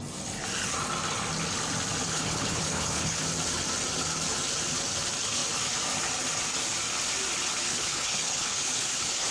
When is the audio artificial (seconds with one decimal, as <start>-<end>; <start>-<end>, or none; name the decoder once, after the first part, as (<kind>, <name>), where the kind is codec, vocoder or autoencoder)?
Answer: 2.1-3.2 (codec, HILCodec); 7.7-9.3